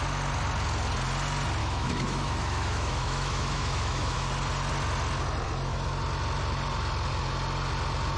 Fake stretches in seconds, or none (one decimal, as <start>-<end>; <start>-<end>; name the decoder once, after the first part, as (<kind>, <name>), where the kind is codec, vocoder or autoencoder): 1.6-4.3 (autoencoder, DAC-VAE)